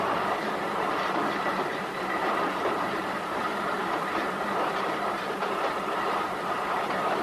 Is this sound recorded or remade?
remade